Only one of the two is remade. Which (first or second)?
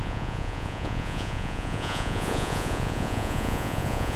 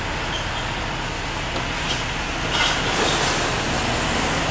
first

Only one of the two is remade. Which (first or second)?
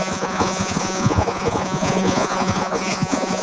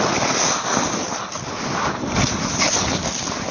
first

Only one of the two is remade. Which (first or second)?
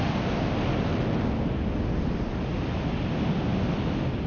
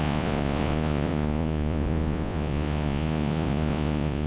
second